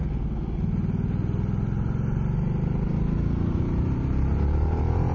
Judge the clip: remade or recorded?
recorded